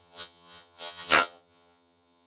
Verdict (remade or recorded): remade